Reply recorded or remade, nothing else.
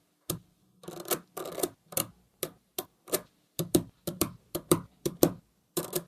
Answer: remade